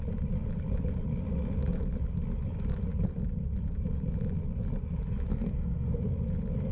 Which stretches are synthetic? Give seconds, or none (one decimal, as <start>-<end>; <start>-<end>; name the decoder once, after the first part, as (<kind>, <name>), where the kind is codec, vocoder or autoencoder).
5.3-6.0 (codec, SNAC)

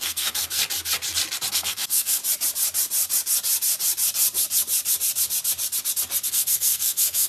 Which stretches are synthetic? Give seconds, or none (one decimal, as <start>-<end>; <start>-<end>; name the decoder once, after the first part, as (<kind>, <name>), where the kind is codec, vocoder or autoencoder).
0.0-0.6 (codec, SNAC); 1.5-2.2; 6.3-7.3

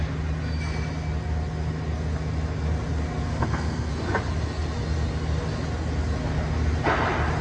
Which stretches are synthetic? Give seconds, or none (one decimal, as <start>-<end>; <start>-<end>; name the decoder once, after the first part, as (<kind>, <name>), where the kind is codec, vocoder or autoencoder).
3.3-3.9 (codec, SNAC)